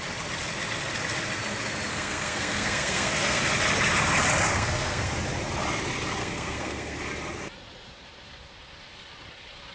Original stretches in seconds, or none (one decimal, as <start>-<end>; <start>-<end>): 0.0-1.9; 3.4-4.5; 5.1-6.2; 7.0-9.7